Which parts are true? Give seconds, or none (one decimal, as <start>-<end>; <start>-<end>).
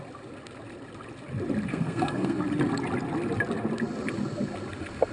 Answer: 0.0-1.7; 2.4-5.1